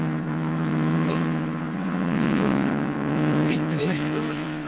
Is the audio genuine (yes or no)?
no